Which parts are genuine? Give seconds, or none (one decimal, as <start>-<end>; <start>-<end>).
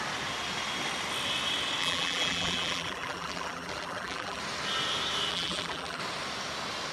0.0-1.8; 4.4-5.3; 6.0-6.9